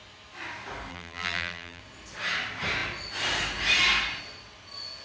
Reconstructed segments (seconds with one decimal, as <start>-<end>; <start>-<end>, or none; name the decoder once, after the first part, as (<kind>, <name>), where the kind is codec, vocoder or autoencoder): 0.9-1.8 (vocoder, BigVGAN v2)